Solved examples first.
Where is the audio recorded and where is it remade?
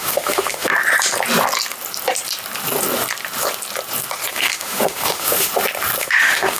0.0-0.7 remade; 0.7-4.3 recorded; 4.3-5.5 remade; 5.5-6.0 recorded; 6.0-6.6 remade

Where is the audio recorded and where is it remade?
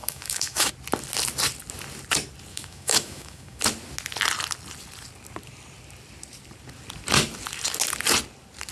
0.0-0.7 remade; 0.7-2.5 recorded; 2.5-3.6 remade; 3.6-8.7 recorded